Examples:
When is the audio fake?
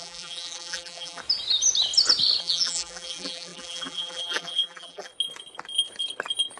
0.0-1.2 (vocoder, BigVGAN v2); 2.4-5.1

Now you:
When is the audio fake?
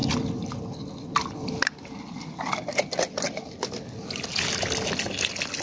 0.0-3.4 (vocoder, BigVGAN v2)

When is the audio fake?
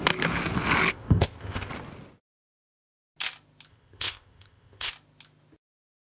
0.9-1.7 (codec, ZipCodec); 3.7-4.9